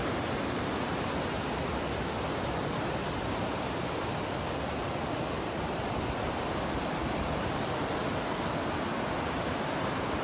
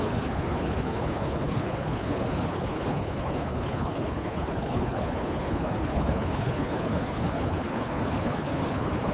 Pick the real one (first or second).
first